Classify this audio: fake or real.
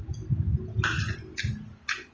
real